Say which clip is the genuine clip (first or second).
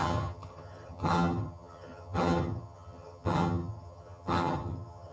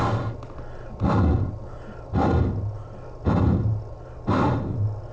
second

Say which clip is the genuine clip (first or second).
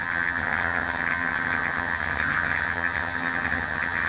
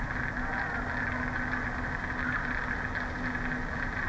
second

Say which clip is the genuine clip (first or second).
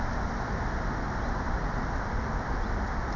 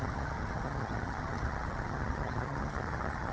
first